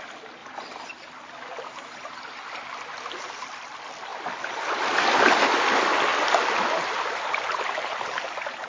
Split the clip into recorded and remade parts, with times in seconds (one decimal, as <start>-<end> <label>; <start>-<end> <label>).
0.0-4.1 recorded; 4.1-5.3 remade; 5.3-8.7 recorded